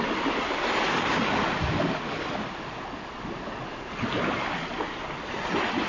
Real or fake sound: real